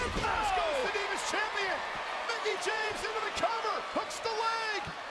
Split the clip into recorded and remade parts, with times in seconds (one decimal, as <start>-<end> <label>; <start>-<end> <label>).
0.0-0.8 recorded; 0.8-3.9 remade; 3.9-5.1 recorded